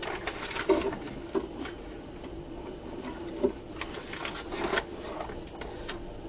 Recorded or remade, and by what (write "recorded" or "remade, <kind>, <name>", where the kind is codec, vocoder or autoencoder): recorded